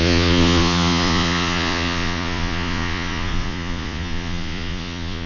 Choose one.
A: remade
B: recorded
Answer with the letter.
A